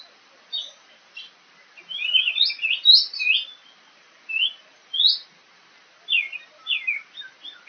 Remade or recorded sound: recorded